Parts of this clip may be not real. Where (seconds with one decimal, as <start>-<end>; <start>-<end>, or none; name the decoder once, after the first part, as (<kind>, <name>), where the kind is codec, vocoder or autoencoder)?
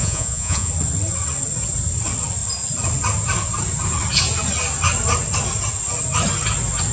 0.0-0.7 (vocoder, Vocos)